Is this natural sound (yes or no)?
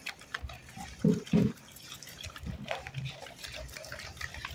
no